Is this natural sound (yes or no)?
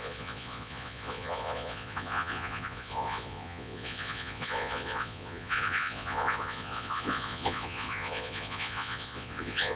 no